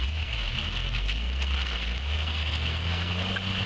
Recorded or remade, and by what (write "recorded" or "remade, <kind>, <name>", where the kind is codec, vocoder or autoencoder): remade, codec, SNAC